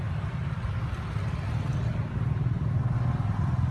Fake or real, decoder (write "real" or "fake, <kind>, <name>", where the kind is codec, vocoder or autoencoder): real